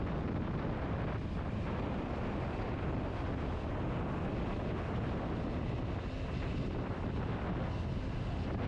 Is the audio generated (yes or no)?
no